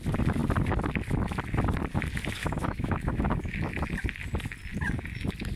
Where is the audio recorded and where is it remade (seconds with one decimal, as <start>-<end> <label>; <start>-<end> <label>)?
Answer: 0.0-2.4 recorded; 2.4-3.7 remade; 3.7-5.6 recorded